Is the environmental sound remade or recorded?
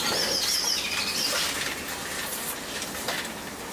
recorded